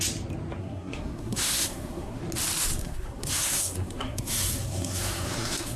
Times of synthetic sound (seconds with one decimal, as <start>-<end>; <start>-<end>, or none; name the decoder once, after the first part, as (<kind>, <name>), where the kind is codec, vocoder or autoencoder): 0.6-2.2 (codec, SNAC); 2.8-5.8